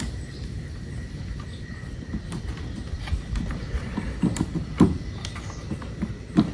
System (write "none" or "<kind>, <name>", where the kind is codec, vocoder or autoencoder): none